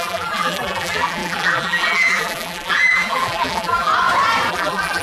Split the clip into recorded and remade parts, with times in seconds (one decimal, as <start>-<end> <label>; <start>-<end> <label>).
0.0-3.9 remade; 3.9-4.5 recorded; 4.5-5.0 remade